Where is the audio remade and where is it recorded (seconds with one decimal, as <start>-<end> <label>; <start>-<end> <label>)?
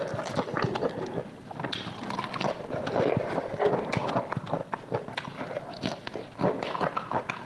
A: 0.0-7.5 recorded